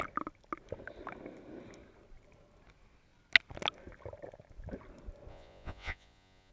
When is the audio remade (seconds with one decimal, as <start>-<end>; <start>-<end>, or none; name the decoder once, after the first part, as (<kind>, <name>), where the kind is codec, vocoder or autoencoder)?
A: 5.3-6.5 (vocoder, Vocos)

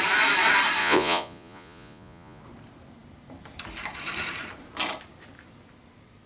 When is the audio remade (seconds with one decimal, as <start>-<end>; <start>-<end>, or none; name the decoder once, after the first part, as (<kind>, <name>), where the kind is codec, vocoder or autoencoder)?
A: 0.8-2.4 (vocoder, Vocos)

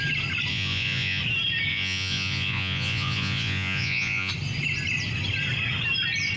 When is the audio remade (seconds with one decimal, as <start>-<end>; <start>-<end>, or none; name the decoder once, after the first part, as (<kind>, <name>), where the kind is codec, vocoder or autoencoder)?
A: 0.5-1.2 (vocoder, Vocos); 1.7-4.3

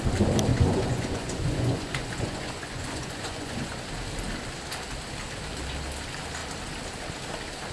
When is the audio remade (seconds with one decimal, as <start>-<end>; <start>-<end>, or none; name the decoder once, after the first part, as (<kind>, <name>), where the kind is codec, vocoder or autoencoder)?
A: 0.5-3.8 (vocoder, Vocos)

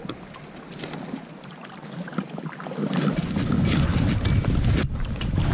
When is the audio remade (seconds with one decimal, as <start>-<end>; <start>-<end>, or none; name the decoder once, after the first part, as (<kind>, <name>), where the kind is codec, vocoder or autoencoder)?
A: none

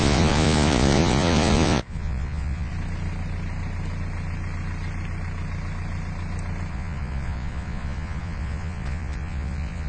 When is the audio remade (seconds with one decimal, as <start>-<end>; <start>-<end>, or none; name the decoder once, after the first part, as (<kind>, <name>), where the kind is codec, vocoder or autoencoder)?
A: 0.0-2.7 (vocoder, Vocos); 6.7-9.9

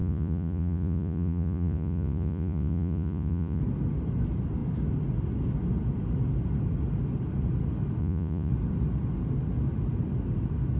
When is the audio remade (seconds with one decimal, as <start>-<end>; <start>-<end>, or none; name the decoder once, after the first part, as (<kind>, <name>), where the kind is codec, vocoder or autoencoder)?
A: 0.0-3.6 (vocoder, Vocos); 8.0-8.5